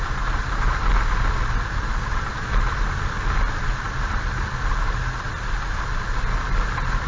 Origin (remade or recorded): recorded